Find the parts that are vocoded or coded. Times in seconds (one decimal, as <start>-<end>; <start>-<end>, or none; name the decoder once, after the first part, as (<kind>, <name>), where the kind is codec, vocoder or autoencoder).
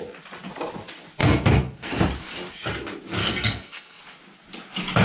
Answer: 1.2-2.0 (codec, SNAC); 3.2-4.0